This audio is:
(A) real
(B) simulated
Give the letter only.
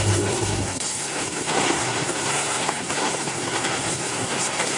B